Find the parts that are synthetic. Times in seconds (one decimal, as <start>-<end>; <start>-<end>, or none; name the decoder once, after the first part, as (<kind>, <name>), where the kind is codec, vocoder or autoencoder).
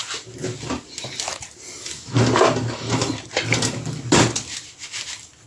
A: none